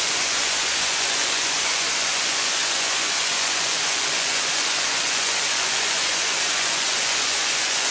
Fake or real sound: fake